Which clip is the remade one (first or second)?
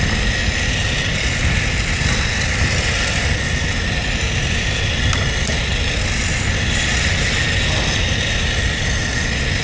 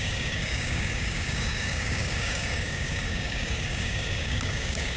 second